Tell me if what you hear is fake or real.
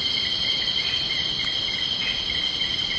real